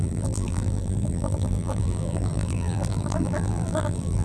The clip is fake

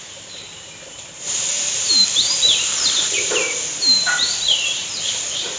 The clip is fake